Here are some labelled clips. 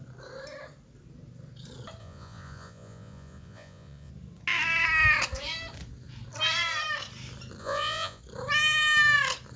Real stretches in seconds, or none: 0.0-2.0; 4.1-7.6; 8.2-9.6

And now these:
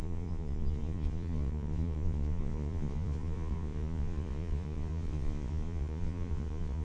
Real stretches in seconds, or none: none

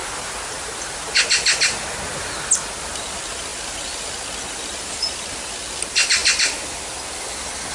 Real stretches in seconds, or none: 0.0-7.7

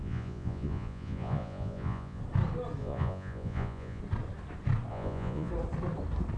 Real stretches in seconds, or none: 2.2-2.8; 4.0-4.9; 5.5-6.4

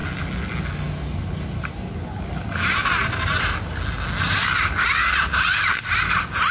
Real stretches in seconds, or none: 0.0-6.5